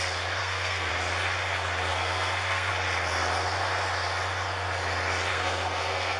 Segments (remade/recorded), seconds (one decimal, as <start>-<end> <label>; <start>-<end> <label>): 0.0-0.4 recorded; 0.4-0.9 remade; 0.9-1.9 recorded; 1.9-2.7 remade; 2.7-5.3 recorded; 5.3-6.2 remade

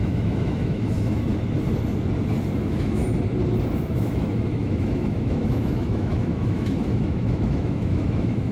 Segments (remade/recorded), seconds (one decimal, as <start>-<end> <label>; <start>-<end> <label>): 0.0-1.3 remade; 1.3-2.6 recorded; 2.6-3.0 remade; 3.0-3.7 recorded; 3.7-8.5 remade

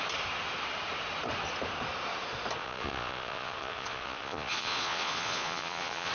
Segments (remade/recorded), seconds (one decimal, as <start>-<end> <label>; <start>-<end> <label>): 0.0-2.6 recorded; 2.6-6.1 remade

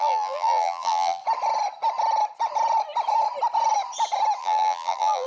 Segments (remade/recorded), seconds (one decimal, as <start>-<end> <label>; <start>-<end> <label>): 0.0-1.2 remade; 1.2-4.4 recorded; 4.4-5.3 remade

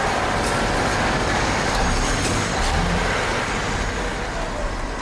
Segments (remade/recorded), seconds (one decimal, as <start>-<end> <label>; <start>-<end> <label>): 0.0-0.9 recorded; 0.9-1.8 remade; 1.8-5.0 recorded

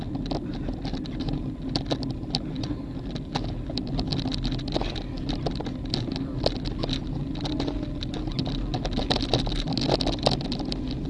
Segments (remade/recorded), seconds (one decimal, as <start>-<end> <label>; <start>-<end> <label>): 0.0-11.1 recorded